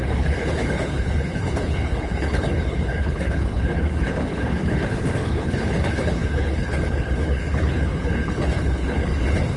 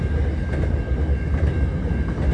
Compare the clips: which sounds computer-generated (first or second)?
first